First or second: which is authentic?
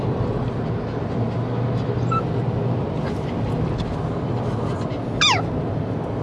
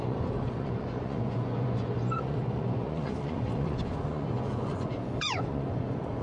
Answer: first